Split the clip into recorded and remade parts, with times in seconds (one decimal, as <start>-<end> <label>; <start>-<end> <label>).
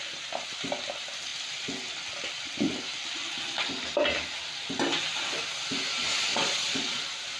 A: 0.0-6.3 recorded; 6.3-7.0 remade; 7.0-7.4 recorded